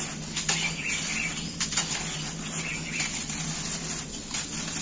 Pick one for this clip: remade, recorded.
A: recorded